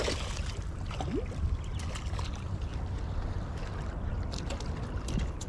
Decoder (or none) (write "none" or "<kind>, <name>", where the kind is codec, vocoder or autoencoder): none